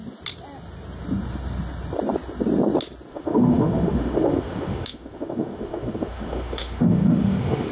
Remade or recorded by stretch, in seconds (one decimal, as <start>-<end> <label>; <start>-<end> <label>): 0.0-3.1 recorded; 3.1-7.7 remade